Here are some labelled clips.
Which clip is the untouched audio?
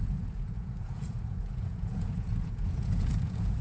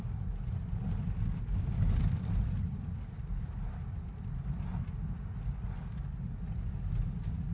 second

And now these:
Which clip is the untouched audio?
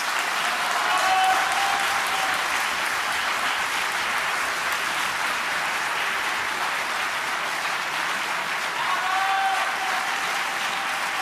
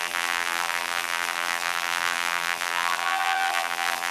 first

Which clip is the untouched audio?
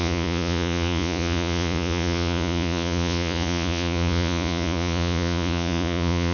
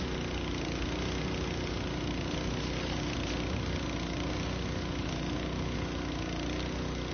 second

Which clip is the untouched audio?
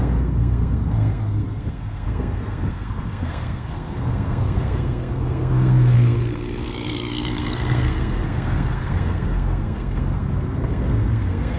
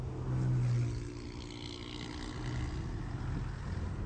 second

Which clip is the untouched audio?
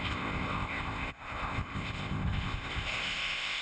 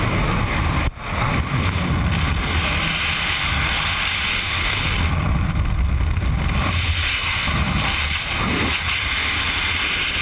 second